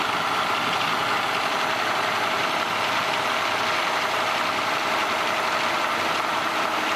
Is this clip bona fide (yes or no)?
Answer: yes